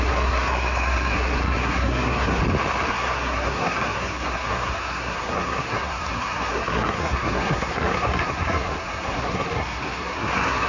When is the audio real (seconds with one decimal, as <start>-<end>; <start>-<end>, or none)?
2.4-2.9